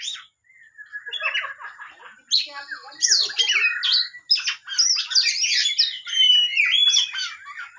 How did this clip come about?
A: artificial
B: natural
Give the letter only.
B